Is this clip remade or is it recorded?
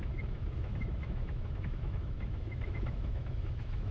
remade